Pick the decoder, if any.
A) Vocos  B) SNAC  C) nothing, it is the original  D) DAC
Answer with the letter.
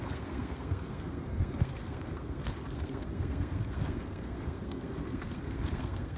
B